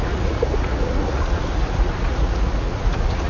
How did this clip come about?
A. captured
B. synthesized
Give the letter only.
B